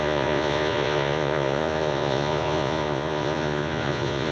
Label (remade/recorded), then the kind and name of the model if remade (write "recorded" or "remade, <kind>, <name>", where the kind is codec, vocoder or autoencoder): remade, vocoder, Vocos